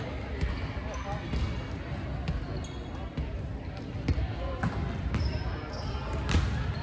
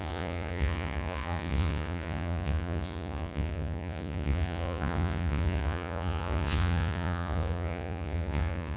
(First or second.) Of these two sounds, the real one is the first